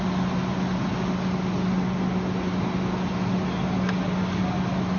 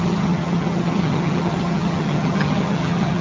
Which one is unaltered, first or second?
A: first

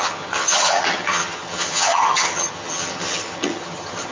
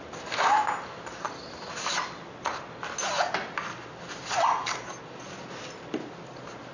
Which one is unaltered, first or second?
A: second